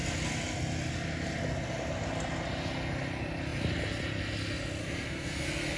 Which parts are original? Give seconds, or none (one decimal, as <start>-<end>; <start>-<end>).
0.0-4.8